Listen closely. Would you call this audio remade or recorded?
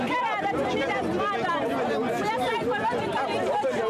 recorded